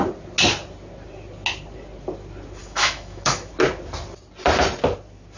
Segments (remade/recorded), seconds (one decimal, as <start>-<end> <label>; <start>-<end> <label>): 0.0-2.6 recorded; 2.6-3.5 remade; 3.5-5.4 recorded